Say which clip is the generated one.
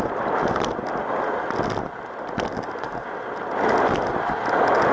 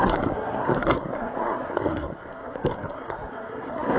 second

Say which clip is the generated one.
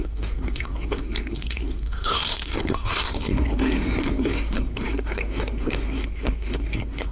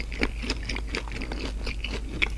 first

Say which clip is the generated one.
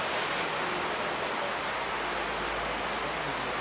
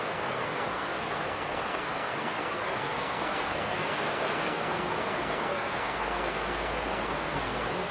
second